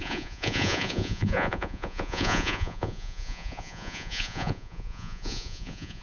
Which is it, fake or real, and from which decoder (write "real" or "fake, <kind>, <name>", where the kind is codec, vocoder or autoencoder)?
fake, vocoder, Vocos